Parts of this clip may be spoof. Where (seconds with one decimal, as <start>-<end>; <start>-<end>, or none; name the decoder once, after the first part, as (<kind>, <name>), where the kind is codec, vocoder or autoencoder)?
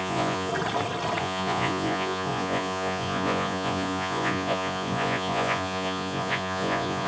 0.0-0.5 (vocoder, Vocos); 1.2-7.1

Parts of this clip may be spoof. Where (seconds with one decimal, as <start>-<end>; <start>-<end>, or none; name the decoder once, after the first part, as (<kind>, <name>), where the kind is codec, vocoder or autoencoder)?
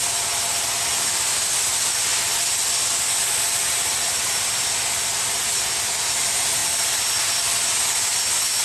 none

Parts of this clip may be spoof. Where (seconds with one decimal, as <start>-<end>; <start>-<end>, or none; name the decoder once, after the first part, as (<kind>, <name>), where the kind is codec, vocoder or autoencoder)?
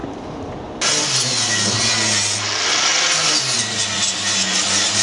none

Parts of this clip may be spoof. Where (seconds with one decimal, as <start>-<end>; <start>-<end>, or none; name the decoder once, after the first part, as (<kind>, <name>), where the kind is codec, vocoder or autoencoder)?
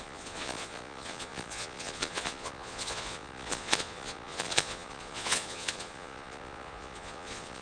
0.0-7.6 (vocoder, Vocos)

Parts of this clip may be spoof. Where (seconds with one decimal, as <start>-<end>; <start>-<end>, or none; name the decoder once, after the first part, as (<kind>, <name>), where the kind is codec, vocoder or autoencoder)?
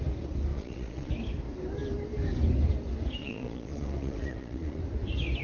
0.5-1.1 (vocoder, Vocos); 3.2-4.8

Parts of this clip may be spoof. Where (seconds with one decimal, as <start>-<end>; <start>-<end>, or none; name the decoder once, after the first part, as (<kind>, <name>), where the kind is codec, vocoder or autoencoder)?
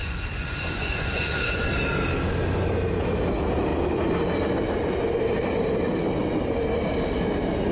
0.0-1.7 (vocoder, Vocos)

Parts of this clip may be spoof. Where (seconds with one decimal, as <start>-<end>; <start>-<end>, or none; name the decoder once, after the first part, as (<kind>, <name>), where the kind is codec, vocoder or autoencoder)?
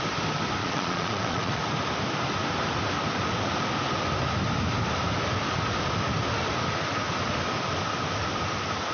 0.6-1.6 (vocoder, Vocos)